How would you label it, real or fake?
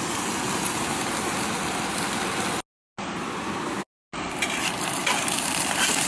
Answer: real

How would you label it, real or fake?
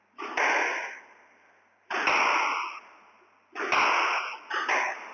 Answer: real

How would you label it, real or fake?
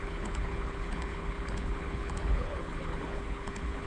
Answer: fake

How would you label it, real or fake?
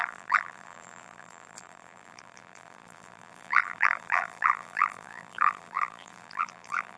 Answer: fake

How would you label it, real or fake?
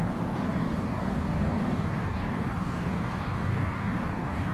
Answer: fake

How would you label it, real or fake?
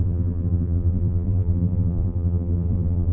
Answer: fake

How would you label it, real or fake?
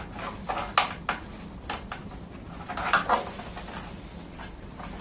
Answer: real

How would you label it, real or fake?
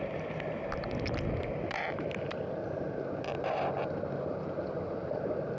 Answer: real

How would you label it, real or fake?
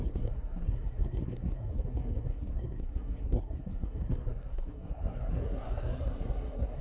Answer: fake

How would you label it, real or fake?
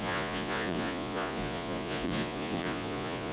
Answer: fake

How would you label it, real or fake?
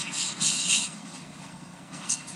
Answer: fake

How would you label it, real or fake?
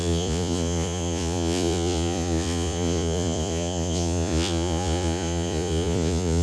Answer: fake